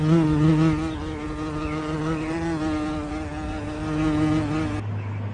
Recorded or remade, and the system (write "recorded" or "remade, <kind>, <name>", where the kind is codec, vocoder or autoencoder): recorded